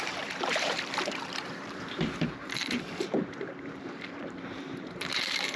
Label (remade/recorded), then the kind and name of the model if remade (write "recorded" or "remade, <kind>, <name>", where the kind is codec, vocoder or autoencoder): remade, vocoder, BigVGAN v2